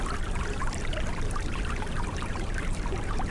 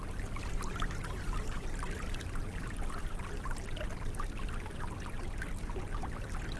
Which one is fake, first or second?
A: first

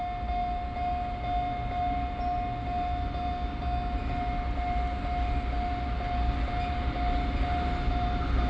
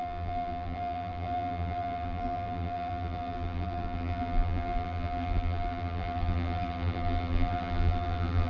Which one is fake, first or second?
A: second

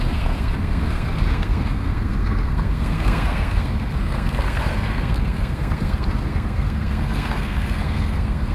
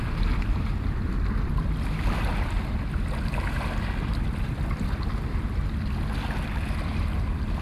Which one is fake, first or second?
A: first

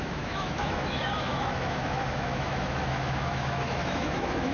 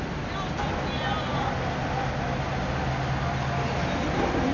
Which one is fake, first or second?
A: first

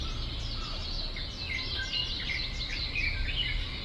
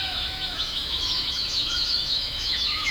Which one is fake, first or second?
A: second